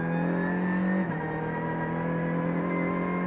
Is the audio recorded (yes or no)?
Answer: yes